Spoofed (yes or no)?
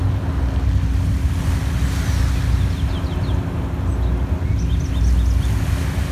no